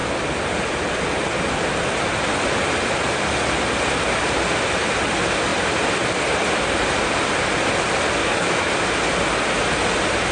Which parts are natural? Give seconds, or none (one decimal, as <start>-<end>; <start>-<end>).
0.0-8.2; 8.7-10.3